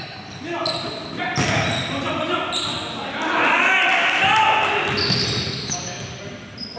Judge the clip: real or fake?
real